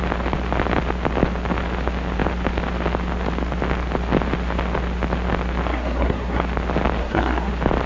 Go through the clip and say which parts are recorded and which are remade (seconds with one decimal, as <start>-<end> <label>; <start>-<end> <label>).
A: 0.0-5.7 recorded; 5.7-6.4 remade; 6.4-7.0 recorded; 7.0-7.5 remade; 7.5-7.9 recorded